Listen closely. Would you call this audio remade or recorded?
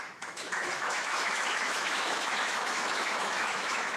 remade